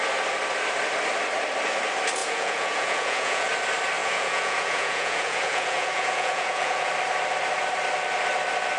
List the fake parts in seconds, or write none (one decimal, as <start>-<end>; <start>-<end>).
2.2-3.5; 4.0-6.9

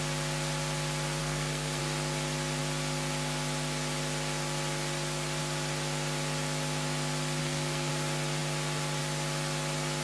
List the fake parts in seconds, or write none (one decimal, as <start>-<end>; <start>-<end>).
1.2-1.8; 7.4-7.9

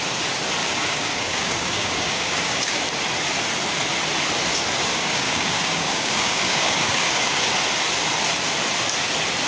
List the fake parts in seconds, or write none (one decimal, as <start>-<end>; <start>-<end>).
0.6-2.8; 4.9-7.4

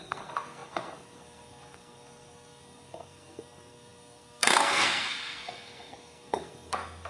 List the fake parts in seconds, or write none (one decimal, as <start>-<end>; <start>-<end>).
0.0-7.1

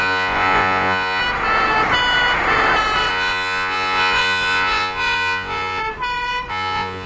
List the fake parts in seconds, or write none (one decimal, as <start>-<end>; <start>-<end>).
0.0-1.2; 3.1-5.8; 6.5-7.1

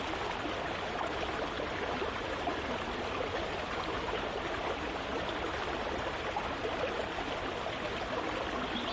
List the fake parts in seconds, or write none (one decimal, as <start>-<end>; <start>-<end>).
none